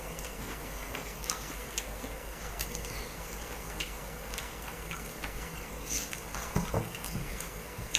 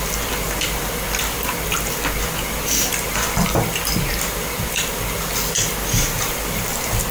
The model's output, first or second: first